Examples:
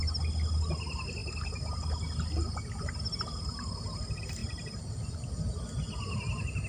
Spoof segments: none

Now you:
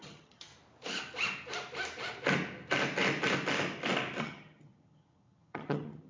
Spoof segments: 0.0-0.5; 4.2-6.1